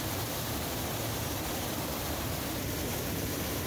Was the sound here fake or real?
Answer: real